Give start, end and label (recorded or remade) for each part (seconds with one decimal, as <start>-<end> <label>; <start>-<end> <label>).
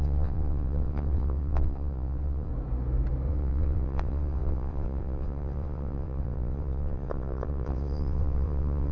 0.0-2.5 remade; 2.5-3.3 recorded; 3.3-8.9 remade